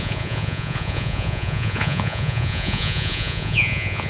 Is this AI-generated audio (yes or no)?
yes